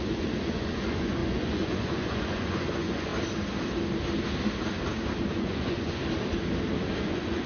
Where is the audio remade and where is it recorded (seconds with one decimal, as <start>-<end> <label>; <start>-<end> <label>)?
0.0-3.1 remade; 3.1-5.3 recorded; 5.3-6.0 remade; 6.0-7.0 recorded; 7.0-7.5 remade